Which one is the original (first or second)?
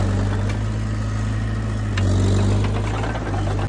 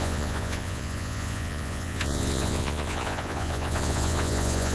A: first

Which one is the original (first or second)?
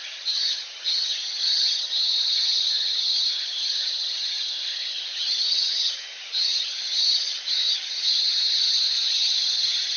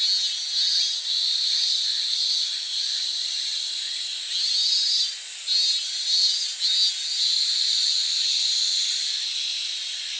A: second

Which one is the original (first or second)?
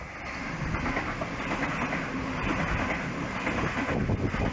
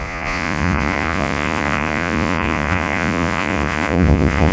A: first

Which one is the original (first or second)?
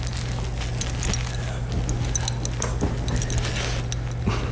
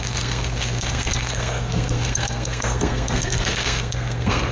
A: first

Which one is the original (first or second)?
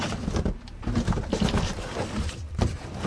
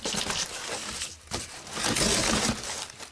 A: second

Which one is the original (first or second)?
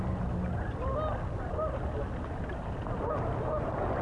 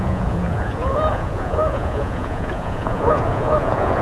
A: first